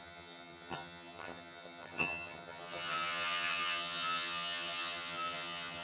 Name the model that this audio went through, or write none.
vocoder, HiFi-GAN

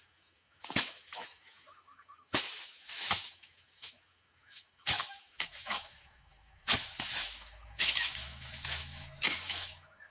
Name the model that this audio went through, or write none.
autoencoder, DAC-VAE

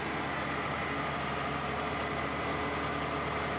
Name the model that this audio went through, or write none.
none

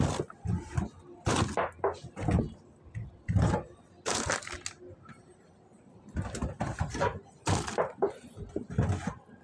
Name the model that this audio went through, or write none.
none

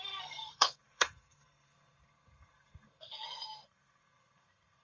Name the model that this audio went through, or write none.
codec, SNAC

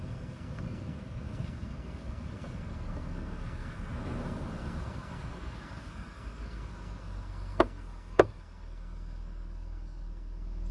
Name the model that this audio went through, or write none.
codec, SNAC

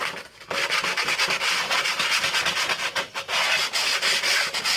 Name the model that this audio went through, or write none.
none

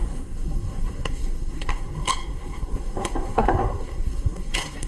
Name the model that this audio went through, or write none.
codec, SNAC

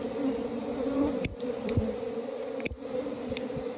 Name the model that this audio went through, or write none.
vocoder, BigVGAN v2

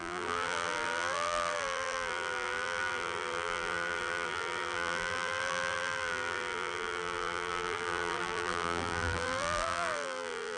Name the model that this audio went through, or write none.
vocoder, BigVGAN v2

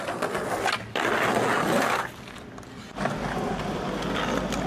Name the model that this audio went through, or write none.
none